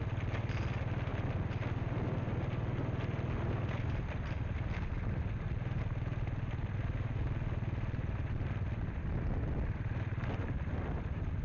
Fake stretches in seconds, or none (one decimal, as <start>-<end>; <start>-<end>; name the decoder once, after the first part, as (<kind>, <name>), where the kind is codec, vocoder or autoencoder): none